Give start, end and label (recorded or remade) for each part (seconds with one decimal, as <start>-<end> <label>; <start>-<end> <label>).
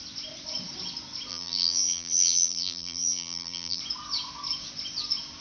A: 0.0-1.3 recorded; 1.3-3.8 remade; 3.8-5.4 recorded